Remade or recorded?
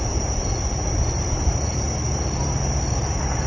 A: remade